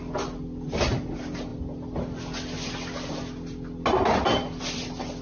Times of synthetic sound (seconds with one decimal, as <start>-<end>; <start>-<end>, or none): none